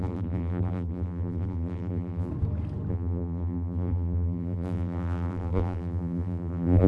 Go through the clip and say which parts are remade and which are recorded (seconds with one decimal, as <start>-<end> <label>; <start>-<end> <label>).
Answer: 0.0-2.3 remade; 2.3-2.9 recorded; 2.9-6.9 remade